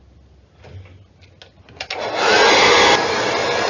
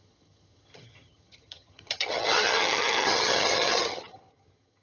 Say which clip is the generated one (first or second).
second